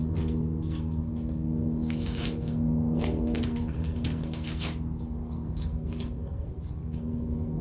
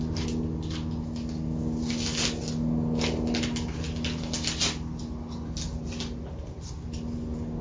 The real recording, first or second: second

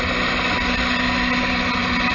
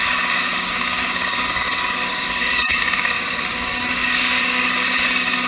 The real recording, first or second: first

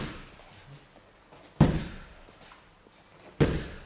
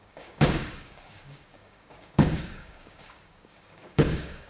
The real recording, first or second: first